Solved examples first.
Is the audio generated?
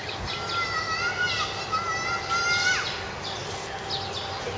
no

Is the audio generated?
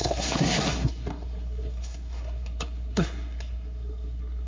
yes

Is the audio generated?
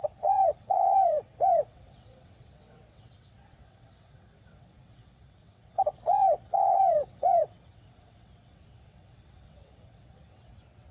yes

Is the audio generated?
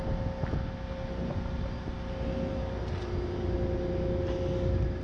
no